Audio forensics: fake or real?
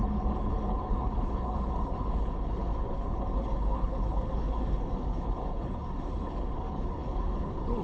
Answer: fake